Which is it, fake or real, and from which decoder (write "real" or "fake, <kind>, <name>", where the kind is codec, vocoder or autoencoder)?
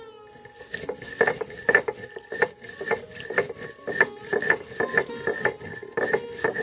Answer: real